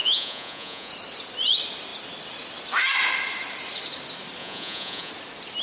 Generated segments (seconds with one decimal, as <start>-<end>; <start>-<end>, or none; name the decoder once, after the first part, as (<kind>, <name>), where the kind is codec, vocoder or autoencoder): 0.0-0.9 (vocoder, Vocos); 4.4-5.1